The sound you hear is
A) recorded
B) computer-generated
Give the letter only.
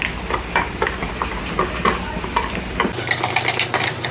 A